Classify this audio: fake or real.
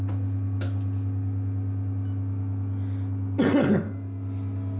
real